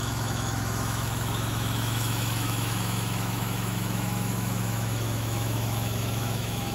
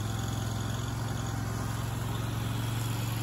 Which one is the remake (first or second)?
first